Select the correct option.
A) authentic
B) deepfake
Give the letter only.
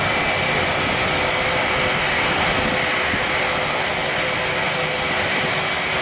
A